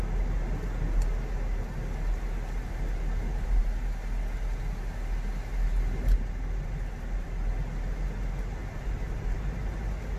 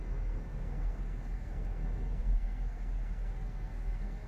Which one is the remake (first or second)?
second